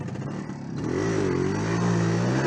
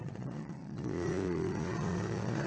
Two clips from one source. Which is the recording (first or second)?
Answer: first